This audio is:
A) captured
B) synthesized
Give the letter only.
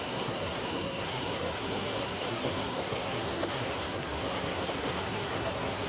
B